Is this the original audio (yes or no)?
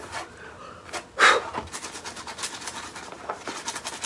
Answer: yes